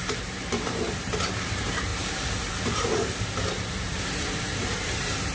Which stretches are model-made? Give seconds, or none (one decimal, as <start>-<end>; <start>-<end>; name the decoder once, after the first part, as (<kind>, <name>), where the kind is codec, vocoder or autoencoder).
0.0-5.3 (vocoder, BigVGAN v2)